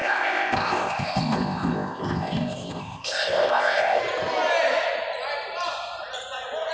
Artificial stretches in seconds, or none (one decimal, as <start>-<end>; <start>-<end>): 0.0-4.0